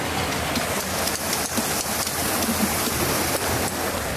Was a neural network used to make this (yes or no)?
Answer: no